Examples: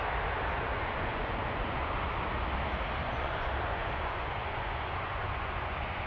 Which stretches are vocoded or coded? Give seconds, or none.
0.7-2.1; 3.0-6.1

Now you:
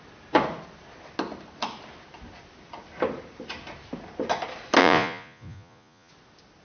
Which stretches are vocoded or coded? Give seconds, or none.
4.8-6.1